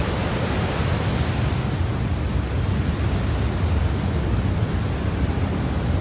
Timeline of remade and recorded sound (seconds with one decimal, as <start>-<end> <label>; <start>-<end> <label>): 0.0-6.0 recorded